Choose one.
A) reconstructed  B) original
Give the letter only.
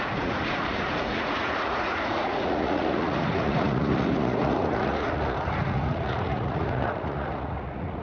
A